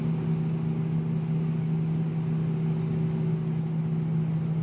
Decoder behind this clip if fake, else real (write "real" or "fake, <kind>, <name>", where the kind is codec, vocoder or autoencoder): real